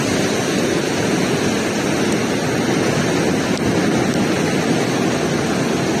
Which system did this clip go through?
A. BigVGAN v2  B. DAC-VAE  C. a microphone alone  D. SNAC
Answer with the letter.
C